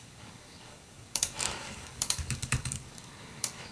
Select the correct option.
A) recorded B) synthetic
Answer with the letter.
B